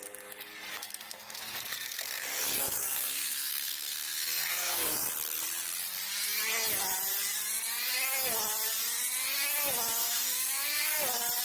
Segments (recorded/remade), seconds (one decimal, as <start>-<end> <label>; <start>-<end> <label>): 0.0-0.7 recorded; 0.7-5.1 remade; 5.1-10.0 recorded; 10.0-11.0 remade; 11.0-11.4 recorded